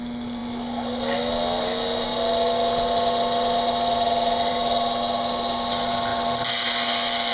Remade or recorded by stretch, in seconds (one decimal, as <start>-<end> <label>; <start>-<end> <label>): 0.0-7.3 recorded